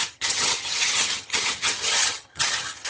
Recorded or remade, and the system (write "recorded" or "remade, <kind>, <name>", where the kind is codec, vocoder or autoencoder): remade, vocoder, HiFi-GAN